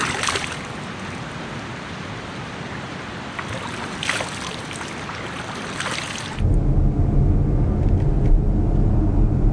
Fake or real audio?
real